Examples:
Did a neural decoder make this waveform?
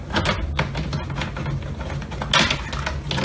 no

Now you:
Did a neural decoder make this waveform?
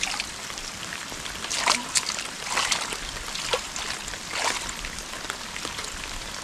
no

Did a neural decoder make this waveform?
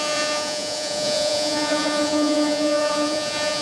yes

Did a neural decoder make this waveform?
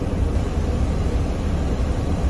no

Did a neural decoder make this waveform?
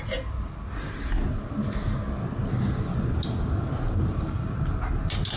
no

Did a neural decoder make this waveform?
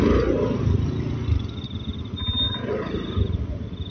no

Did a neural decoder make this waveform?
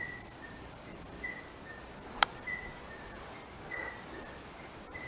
no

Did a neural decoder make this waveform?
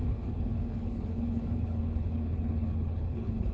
yes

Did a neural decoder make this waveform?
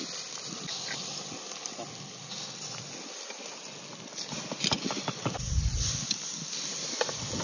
no